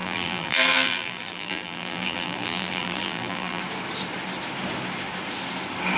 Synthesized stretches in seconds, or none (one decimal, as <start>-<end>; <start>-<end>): 0.0-3.6